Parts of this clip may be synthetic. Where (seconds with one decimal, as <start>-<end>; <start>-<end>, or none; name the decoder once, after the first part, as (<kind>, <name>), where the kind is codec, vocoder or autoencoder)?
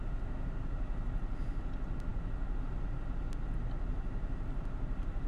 none